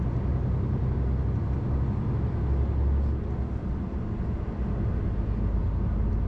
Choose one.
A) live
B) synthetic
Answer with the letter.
A